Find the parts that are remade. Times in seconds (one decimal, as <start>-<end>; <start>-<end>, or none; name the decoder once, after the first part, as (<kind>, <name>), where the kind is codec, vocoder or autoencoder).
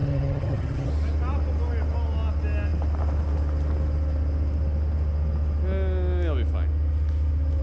0.0-0.9 (vocoder, HiFi-GAN)